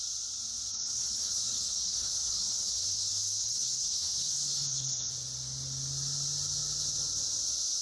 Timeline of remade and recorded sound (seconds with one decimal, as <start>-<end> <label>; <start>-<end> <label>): 0.0-0.7 recorded; 0.7-5.1 remade; 5.1-7.8 recorded